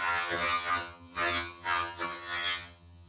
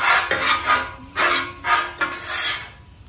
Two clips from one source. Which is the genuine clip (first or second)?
second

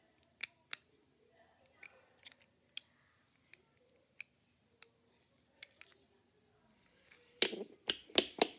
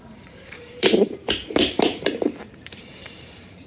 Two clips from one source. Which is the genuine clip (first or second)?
first